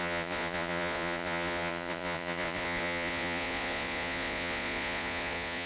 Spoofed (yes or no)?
yes